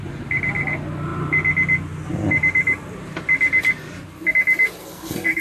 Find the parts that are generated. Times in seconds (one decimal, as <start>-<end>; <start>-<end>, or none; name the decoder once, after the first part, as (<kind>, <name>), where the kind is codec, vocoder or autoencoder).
4.8-5.4 (codec, SNAC)